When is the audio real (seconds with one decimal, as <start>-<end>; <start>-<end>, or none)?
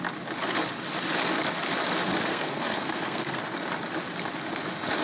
0.0-2.3; 3.4-5.0